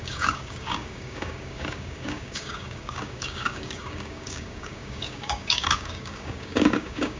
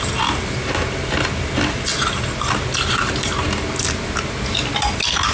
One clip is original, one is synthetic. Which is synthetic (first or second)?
first